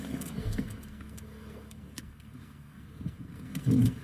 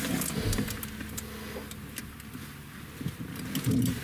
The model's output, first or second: first